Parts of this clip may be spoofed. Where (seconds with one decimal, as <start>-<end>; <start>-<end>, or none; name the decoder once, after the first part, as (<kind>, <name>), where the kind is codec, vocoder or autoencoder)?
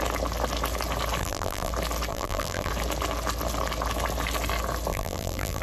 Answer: 1.2-1.7 (vocoder, BigVGAN v2); 2.1-2.7; 4.9-5.6